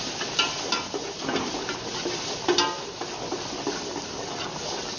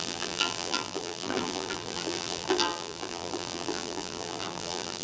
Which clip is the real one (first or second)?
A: first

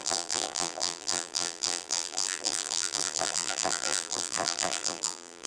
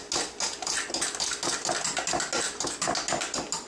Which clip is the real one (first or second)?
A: second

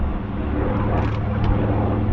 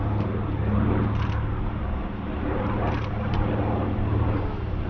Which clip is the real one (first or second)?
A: first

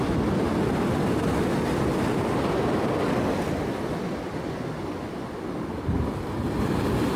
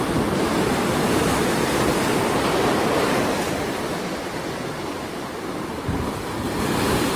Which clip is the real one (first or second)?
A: first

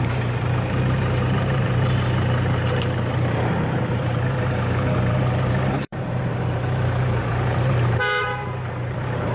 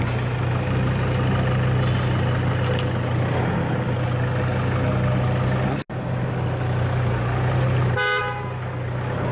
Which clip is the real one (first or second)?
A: second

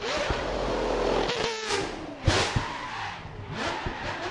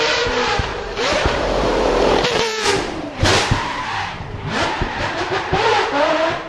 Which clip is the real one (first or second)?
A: first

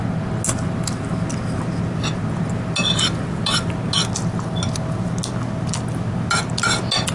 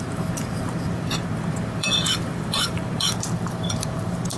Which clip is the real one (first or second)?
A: first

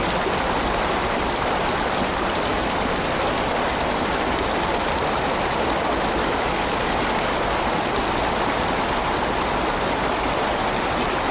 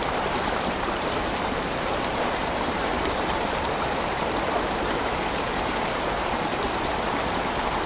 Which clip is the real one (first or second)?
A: first